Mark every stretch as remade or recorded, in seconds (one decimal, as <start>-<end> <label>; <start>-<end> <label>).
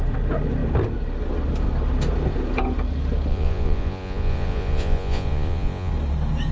0.0-3.3 recorded; 3.3-5.9 remade; 5.9-6.5 recorded